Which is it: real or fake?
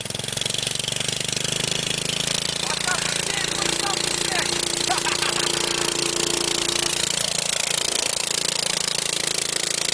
real